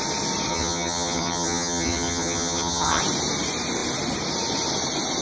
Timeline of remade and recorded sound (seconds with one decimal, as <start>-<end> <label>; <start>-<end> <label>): 0.0-0.5 recorded; 0.5-3.0 remade; 3.0-5.2 recorded